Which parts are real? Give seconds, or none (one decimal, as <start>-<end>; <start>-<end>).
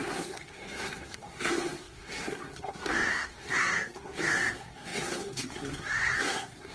none